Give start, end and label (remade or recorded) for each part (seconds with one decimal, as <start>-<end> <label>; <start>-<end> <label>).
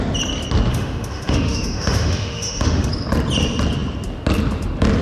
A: 0.0-0.7 recorded; 0.7-2.9 remade; 2.9-5.0 recorded